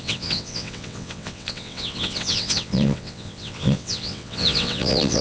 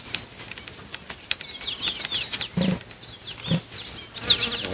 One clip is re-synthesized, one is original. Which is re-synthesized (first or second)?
first